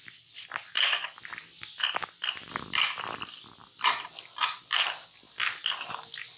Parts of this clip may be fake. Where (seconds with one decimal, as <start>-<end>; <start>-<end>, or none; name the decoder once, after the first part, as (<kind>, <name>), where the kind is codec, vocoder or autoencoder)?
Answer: 3.6-4.7 (vocoder, BigVGAN v2)